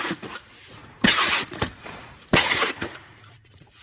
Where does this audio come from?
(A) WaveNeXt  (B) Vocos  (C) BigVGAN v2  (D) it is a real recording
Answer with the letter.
B